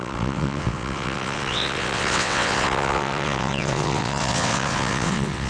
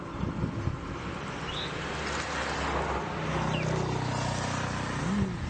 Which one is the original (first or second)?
second